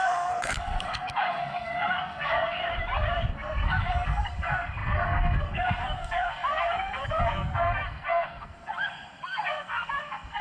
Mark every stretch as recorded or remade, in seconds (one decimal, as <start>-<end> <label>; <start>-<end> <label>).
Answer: 0.0-2.6 remade; 2.6-3.3 recorded; 3.3-10.4 remade